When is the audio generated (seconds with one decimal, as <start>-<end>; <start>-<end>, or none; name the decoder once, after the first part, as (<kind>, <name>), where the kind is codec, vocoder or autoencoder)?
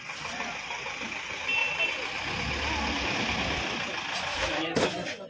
4.3-4.8 (autoencoder, DAC-VAE)